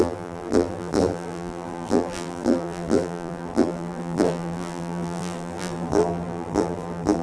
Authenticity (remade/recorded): remade